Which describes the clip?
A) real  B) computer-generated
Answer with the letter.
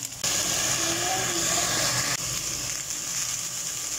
A